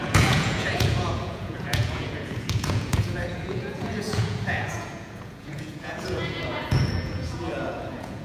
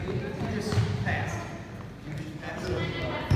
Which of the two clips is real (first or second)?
second